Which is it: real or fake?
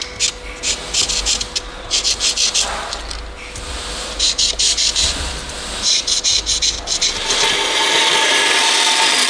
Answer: real